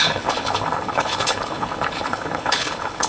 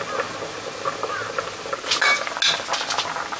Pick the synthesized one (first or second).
first